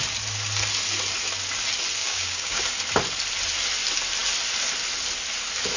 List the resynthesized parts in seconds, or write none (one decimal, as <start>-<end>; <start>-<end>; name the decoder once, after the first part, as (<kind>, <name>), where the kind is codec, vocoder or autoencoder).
2.0-2.6 (codec, DAC)